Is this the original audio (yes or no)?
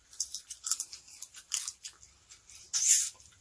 yes